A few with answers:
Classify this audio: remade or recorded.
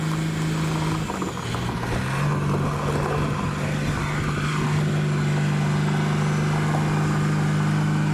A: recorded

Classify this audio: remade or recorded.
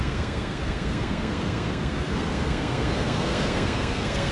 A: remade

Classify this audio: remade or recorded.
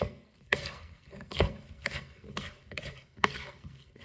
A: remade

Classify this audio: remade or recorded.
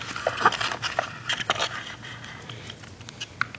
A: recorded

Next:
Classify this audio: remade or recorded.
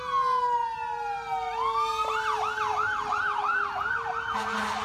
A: recorded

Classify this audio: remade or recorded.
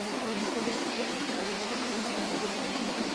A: remade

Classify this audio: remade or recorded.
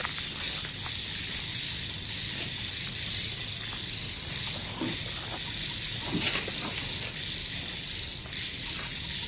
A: recorded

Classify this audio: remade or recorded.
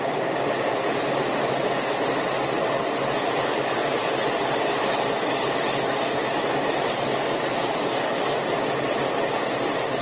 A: recorded